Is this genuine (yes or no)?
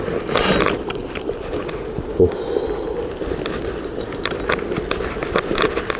yes